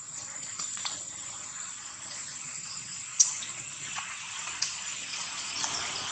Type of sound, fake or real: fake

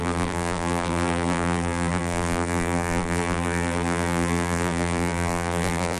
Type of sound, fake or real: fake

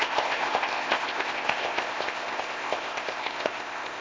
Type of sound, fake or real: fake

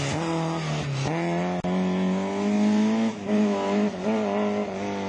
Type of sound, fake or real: real